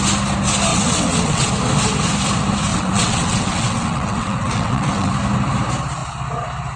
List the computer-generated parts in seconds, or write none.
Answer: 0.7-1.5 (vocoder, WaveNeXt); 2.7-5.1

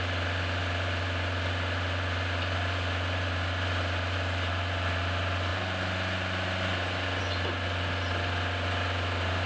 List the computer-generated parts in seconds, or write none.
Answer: none

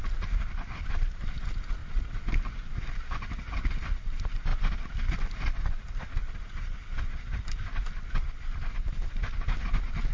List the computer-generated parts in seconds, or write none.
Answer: none

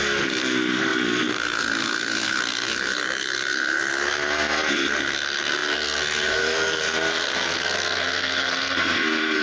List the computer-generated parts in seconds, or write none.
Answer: 0.0-9.4 (codec, SNAC)

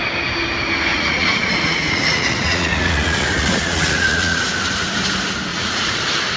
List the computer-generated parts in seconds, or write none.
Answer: 0.9-4.4 (vocoder, Vocos); 5.5-6.0

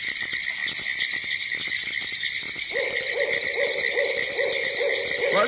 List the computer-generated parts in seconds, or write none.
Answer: none

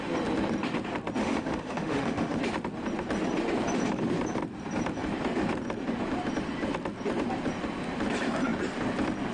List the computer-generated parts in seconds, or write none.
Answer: 1.2-2.4 (autoencoder, DAC-VAE)

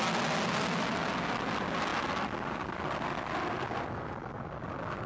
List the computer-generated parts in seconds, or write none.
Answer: none